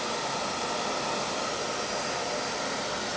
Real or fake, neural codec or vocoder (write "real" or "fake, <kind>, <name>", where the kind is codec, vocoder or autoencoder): fake, vocoder, BigVGAN v2